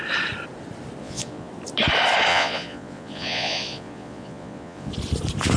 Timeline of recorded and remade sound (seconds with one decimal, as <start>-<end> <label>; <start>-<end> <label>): 0.0-1.0 recorded; 1.0-1.5 remade; 1.5-2.3 recorded; 2.3-4.9 remade; 4.9-5.6 recorded